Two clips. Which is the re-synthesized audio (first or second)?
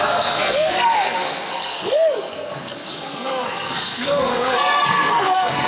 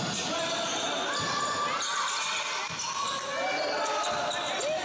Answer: first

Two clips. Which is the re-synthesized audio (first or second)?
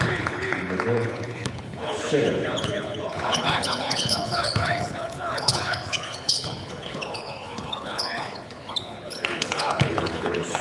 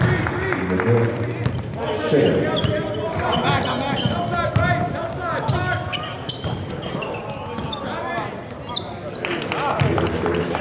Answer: first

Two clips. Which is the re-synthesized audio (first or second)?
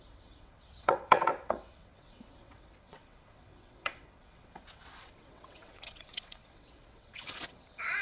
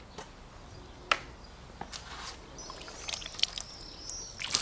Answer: first